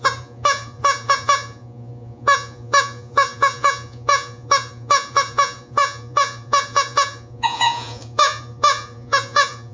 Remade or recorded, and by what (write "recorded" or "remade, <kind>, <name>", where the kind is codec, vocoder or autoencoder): remade, vocoder, Vocos